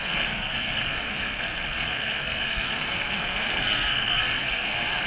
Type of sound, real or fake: fake